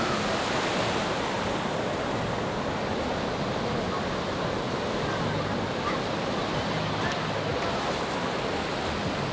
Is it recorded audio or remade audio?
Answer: recorded